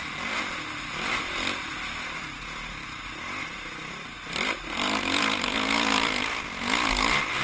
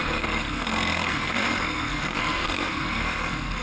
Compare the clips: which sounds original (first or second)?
first